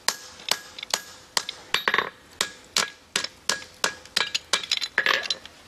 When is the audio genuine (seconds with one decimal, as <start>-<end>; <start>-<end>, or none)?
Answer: 0.0-5.7